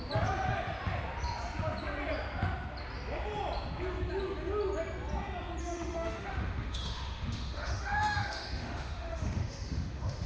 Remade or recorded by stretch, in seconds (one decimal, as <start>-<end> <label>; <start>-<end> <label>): 0.0-5.6 recorded; 5.6-10.3 remade